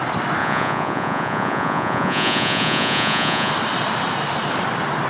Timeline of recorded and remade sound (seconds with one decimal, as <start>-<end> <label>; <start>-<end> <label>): 0.0-0.4 recorded; 0.4-3.5 remade; 3.5-5.1 recorded